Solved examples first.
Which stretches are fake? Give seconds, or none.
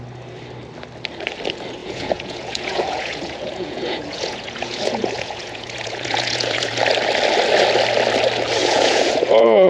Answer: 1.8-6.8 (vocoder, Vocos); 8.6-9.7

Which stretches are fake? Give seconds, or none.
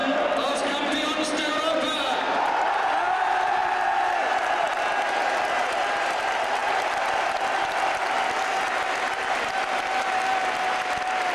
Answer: 0.0-2.9 (vocoder, BigVGAN v2); 3.6-4.8; 6.6-8.6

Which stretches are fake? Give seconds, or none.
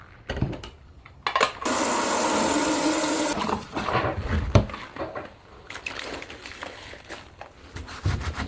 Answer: 0.0-8.5 (vocoder, BigVGAN v2)